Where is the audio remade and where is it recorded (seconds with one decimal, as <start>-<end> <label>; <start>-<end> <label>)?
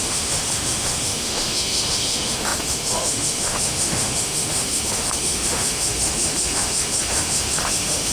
0.0-8.1 remade